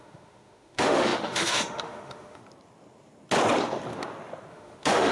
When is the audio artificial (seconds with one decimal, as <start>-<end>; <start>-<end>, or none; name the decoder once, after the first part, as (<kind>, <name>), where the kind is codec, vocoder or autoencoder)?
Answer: 0.0-2.4 (autoencoder, DAC-VAE); 4.5-5.1